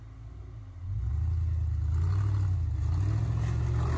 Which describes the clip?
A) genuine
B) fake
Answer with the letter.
A